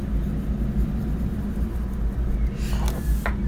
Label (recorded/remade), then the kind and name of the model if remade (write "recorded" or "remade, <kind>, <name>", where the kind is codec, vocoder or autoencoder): recorded